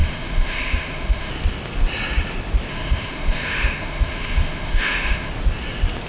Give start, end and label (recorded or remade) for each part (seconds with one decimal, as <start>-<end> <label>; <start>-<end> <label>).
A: 0.0-1.3 remade; 1.3-2.7 recorded; 2.7-5.3 remade; 5.3-6.1 recorded